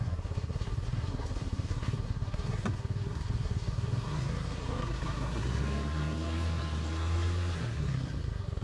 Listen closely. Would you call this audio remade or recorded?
remade